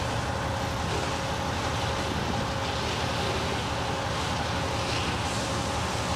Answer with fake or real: real